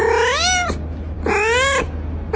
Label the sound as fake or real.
real